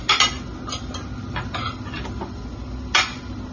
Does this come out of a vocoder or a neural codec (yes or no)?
no